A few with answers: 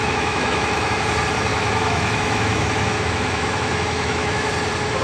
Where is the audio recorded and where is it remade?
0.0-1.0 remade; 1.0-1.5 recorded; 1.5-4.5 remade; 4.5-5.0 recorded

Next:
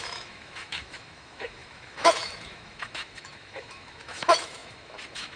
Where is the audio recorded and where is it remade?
0.0-5.4 remade